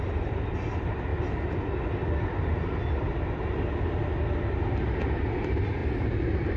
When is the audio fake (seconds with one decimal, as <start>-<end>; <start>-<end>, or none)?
0.0-1.1; 5.1-5.8